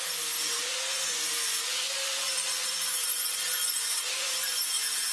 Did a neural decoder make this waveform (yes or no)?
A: yes